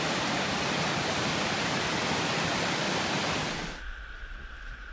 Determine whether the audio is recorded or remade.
remade